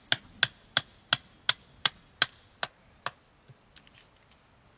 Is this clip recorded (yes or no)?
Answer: yes